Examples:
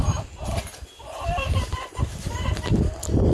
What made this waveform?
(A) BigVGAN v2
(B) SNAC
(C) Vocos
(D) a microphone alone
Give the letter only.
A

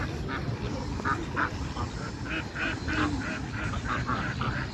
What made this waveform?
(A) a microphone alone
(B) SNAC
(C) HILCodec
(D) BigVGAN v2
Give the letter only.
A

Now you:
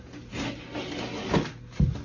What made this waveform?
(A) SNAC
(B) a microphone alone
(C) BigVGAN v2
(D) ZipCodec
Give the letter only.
B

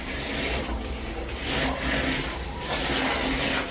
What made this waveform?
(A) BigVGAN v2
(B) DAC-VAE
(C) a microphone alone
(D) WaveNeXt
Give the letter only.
C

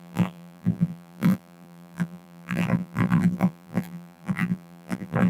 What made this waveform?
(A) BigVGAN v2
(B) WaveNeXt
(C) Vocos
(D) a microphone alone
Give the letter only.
A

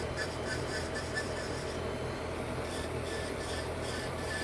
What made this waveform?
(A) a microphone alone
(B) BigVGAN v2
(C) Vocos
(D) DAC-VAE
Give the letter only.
B